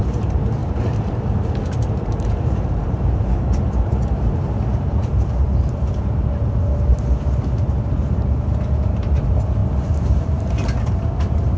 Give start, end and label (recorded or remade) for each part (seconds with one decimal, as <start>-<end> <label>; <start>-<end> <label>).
0.0-0.6 remade; 0.6-2.0 recorded; 2.0-10.6 remade; 10.6-11.2 recorded; 11.2-11.6 remade